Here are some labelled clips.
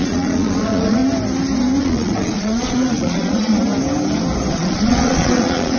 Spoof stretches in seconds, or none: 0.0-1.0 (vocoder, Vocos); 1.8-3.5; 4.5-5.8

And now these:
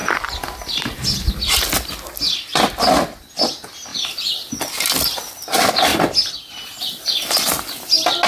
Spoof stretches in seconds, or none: 3.9-4.6 (vocoder, BigVGAN v2)

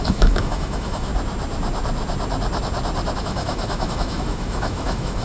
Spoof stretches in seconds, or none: 0.0-1.1 (autoencoder, DAC-VAE); 3.2-5.2

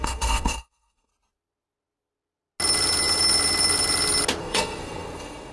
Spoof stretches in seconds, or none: 0.0-1.1 (codec, SNAC); 4.4-5.5

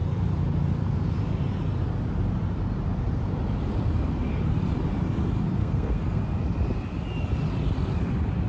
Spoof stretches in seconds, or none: 5.6-6.2 (codec, SNAC)

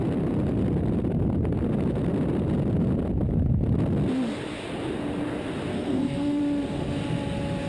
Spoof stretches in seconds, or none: 5.7-6.4 (codec, SNAC)

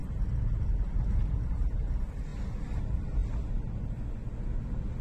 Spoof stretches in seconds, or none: none